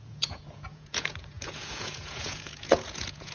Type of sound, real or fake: fake